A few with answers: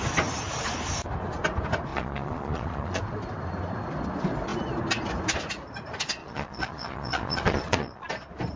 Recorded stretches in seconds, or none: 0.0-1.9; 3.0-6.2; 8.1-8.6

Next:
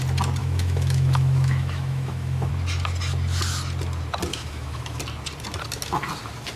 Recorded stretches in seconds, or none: 0.0-0.4; 2.5-4.3; 5.0-6.6